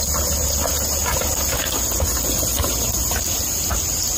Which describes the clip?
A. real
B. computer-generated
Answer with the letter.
A